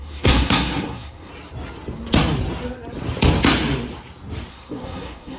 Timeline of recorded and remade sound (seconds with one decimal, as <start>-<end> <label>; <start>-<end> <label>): 0.0-1.3 remade; 1.3-4.5 recorded; 4.5-5.4 remade